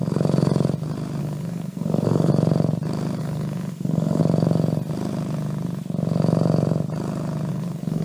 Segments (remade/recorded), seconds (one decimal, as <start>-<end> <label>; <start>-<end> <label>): 0.0-1.2 recorded; 1.2-2.3 remade; 2.3-3.2 recorded; 3.2-4.2 remade; 4.2-7.5 recorded; 7.5-8.0 remade